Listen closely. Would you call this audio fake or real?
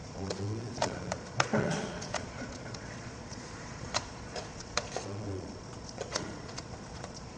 fake